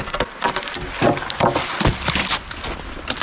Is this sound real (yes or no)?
yes